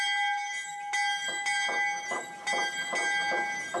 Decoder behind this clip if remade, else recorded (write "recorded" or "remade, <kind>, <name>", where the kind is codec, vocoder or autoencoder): recorded